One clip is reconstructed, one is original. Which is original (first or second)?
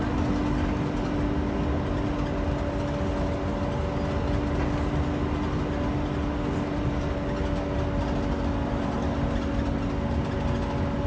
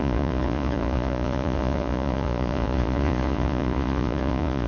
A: first